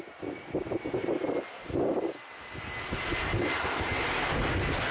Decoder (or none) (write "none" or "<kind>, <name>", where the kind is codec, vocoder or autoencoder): none